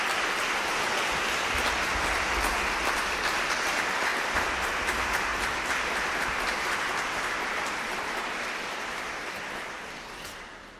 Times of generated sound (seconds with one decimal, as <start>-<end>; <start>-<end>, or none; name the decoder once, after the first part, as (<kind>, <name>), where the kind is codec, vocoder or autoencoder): none